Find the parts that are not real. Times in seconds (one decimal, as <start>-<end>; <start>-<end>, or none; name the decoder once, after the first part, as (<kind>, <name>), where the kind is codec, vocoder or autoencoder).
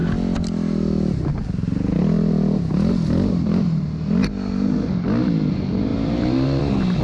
5.9-6.6 (vocoder, BigVGAN v2)